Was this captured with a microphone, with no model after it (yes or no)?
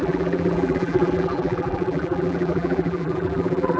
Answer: no